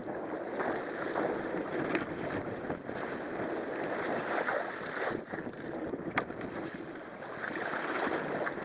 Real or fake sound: real